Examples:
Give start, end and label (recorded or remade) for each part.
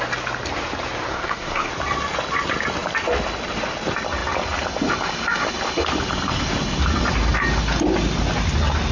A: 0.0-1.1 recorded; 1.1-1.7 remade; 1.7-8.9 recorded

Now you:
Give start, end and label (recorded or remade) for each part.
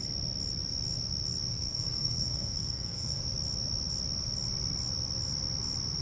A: 0.0-1.5 recorded; 1.5-3.2 remade; 3.2-6.0 recorded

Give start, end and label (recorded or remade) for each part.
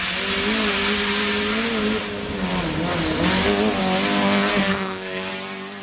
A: 0.0-4.5 recorded; 4.5-5.3 remade; 5.3-5.8 recorded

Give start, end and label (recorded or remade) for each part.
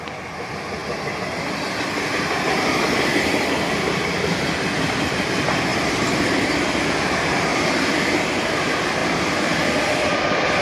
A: 0.0-10.6 recorded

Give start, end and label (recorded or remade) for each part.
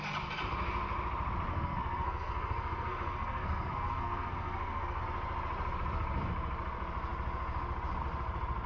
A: 0.0-1.5 recorded; 1.5-5.0 remade; 5.0-8.7 recorded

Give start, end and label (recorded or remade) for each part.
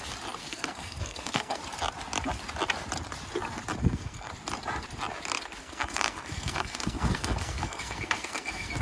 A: 0.0-0.4 recorded; 0.4-1.6 remade; 1.6-3.8 recorded; 3.8-4.3 remade; 4.3-5.6 recorded; 5.6-8.8 remade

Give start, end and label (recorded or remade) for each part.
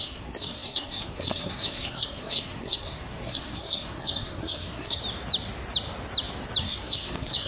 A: 0.0-5.0 remade; 5.0-6.6 recorded; 6.6-7.5 remade